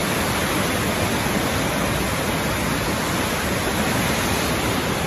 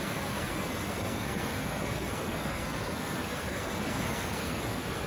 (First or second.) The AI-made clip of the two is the second